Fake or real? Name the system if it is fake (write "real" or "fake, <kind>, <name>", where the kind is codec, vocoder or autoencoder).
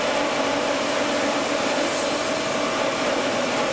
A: real